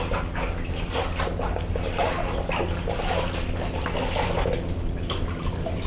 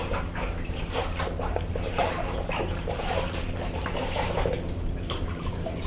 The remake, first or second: second